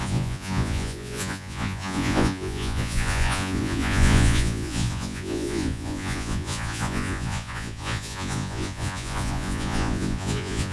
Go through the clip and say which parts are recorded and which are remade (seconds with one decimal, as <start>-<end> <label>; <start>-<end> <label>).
0.0-10.7 remade